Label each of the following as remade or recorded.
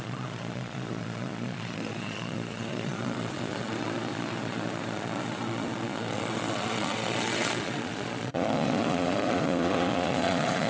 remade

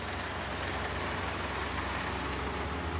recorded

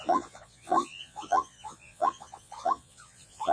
remade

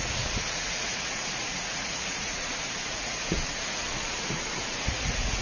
remade